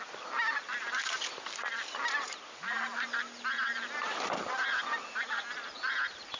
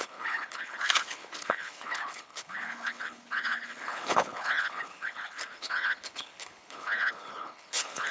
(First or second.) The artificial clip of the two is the second